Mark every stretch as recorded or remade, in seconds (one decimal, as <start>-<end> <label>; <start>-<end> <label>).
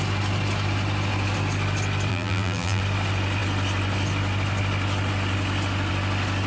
0.0-2.1 recorded; 2.1-2.8 remade; 2.8-6.5 recorded